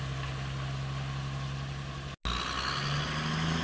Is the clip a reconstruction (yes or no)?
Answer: no